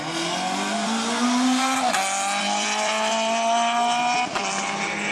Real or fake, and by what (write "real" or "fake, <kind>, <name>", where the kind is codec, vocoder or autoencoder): real